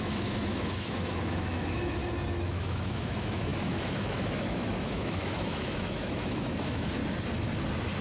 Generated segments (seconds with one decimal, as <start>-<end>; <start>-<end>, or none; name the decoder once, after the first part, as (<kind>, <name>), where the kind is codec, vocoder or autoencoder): 0.0-2.0 (autoencoder, DAC-VAE); 2.5-7.0